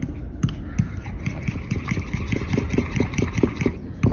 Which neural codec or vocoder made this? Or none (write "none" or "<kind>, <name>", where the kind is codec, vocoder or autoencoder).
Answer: none